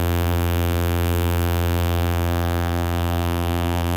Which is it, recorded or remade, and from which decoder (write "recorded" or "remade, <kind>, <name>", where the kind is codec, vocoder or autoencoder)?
remade, vocoder, BigVGAN v2